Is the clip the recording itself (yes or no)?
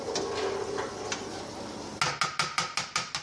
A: yes